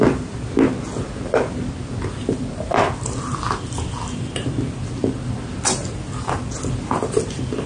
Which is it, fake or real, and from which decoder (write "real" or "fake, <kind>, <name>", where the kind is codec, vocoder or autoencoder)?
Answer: real